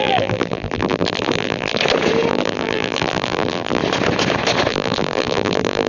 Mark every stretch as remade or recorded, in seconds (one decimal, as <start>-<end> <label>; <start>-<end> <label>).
0.0-1.8 remade; 1.8-2.3 recorded; 2.3-3.8 remade; 3.8-4.7 recorded; 4.7-5.9 remade